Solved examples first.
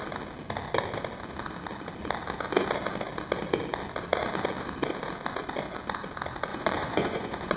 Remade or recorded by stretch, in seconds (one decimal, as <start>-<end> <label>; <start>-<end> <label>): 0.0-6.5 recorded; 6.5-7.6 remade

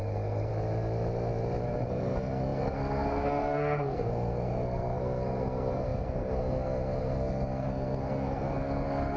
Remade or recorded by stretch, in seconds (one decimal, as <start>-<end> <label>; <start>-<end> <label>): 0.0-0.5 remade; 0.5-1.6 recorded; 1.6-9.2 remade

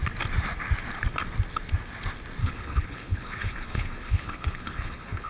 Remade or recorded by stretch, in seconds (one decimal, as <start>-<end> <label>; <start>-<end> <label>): 0.0-2.4 recorded; 2.4-5.3 remade

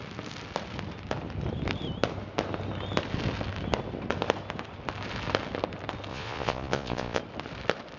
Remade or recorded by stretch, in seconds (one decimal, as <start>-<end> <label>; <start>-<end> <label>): 0.0-6.1 recorded; 6.1-7.2 remade; 7.2-8.0 recorded

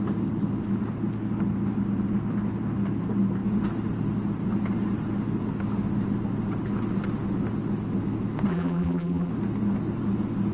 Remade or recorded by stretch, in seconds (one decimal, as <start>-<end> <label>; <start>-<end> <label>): 0.0-8.5 recorded; 8.5-9.3 remade; 9.3-10.5 recorded

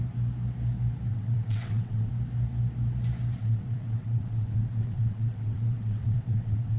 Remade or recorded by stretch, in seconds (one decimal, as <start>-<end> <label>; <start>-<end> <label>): 0.0-1.1 recorded; 1.1-2.1 remade; 2.1-3.4 recorded; 3.4-6.8 remade